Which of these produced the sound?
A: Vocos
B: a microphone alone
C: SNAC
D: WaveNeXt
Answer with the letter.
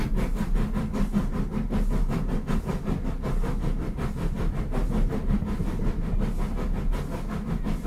B